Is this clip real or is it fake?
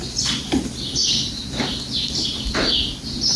real